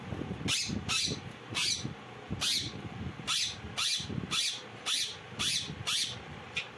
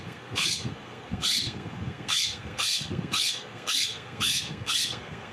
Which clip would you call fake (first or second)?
second